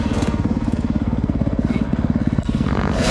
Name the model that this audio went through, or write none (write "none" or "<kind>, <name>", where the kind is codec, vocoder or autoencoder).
codec, SNAC